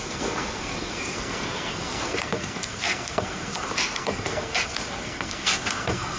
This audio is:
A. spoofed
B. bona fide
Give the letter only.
A